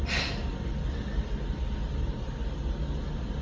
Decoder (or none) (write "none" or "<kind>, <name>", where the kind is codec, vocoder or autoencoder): none